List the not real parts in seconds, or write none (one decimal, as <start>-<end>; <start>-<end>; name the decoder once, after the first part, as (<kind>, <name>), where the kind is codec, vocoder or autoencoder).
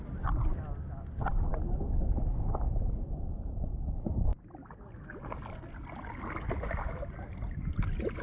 none